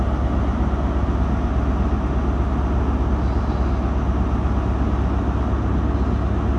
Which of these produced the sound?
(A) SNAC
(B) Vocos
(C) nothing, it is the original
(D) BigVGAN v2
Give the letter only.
C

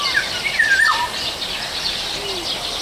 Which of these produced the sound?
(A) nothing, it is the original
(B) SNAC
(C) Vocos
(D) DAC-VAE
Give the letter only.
A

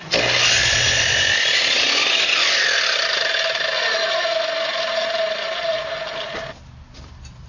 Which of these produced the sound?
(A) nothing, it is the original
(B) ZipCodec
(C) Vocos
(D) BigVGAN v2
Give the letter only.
A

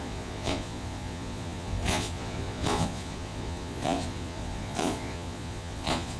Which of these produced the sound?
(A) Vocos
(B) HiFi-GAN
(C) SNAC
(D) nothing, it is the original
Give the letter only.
A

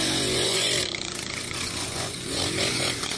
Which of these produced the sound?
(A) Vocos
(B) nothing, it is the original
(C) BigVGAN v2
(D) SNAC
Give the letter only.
A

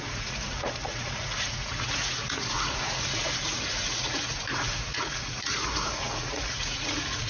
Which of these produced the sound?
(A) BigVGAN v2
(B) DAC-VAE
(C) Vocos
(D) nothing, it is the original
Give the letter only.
C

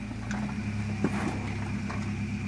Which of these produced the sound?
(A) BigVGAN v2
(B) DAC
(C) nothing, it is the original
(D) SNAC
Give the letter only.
C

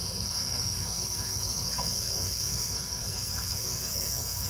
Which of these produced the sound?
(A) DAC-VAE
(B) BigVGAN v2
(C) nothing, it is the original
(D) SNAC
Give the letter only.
D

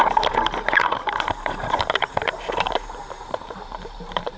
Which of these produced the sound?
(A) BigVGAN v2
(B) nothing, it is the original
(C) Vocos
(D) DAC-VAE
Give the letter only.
A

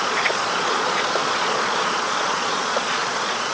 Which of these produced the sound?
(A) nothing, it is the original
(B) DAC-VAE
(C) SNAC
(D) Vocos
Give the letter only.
D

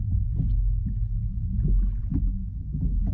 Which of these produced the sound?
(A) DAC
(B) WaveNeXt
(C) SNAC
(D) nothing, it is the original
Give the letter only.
D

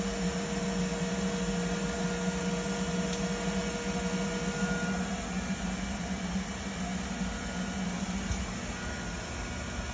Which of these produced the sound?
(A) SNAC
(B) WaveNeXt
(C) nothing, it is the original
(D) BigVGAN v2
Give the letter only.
C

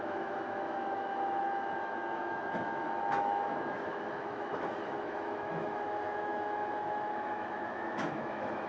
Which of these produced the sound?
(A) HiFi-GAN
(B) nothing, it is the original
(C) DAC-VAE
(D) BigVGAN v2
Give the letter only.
C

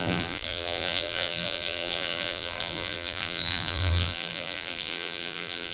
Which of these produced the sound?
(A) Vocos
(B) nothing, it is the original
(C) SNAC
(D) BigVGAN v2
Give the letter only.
D